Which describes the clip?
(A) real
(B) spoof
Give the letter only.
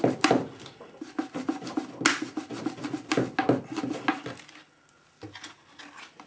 A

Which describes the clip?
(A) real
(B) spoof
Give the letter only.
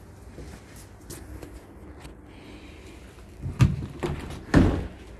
A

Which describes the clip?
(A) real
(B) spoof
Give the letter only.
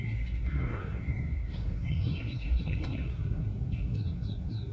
B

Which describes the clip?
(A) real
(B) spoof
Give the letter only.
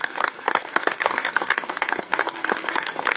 B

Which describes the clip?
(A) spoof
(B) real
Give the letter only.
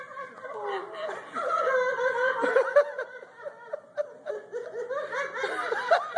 B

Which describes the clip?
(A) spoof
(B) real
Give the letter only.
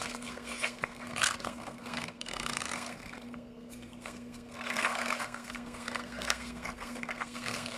A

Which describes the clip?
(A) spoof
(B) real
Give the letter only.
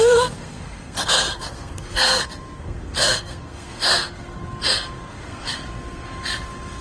A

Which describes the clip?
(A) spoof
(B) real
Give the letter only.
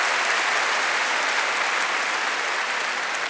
B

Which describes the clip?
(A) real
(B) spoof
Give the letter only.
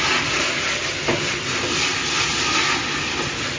A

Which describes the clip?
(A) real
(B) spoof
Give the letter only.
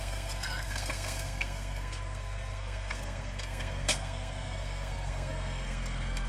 B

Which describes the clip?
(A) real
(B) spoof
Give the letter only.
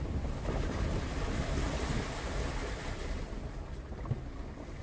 A